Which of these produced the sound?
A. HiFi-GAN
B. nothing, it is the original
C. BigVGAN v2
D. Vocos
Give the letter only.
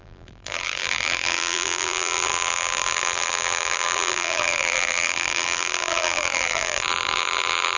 C